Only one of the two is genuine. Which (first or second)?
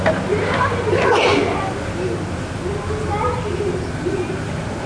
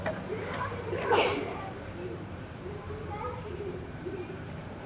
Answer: first